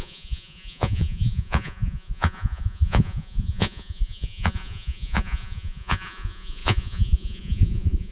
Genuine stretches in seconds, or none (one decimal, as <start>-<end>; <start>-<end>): none